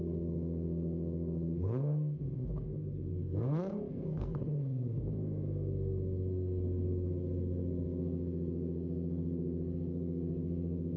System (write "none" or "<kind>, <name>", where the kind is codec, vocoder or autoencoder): codec, SNAC